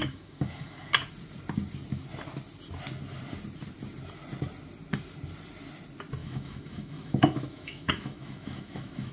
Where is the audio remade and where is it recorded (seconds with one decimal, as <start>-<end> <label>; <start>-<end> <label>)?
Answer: 0.0-0.9 remade; 0.9-6.2 recorded; 6.2-9.1 remade